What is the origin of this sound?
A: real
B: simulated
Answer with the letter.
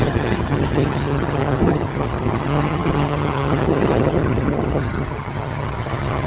B